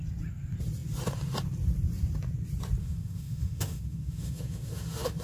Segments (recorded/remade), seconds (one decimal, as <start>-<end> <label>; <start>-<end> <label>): 0.0-2.8 recorded; 2.8-5.2 remade